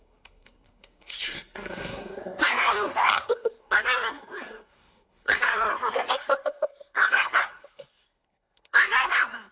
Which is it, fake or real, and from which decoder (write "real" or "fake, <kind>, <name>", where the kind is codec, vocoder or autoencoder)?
fake, codec, SNAC